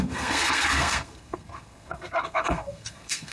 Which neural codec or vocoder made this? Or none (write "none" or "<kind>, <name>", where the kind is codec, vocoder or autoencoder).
codec, SNAC